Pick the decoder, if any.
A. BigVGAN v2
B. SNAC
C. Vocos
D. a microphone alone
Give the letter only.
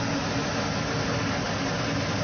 D